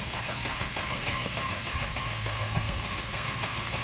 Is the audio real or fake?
fake